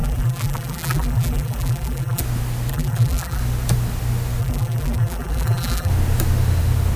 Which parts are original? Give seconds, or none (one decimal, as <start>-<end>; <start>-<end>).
2.2-2.7; 3.4-4.4; 5.9-7.0